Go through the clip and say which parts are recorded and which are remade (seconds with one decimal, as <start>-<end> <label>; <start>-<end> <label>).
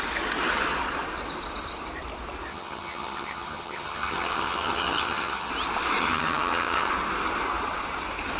0.0-2.5 recorded; 2.5-5.5 remade; 5.5-6.0 recorded; 6.0-6.9 remade; 6.9-8.4 recorded